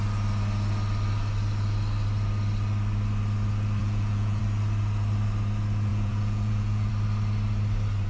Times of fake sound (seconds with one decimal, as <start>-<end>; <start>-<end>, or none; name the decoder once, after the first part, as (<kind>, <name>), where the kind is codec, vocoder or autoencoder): 3.8-4.4 (vocoder, Vocos); 5.9-6.9